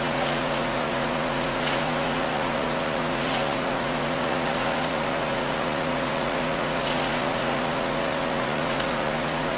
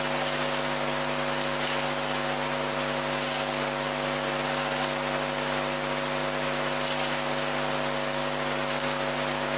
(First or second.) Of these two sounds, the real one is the second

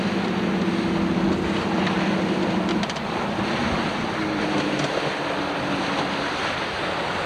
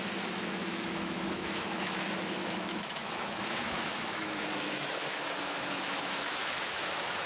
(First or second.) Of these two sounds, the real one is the first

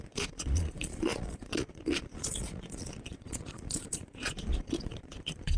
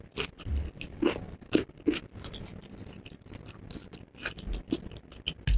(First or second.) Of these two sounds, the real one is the second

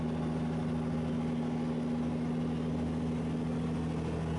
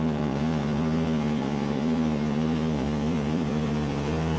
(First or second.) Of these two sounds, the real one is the first